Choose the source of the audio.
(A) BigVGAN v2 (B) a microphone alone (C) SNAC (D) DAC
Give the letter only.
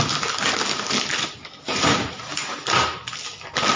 A